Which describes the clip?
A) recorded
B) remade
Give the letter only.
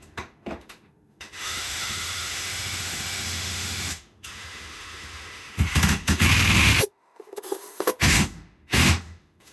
B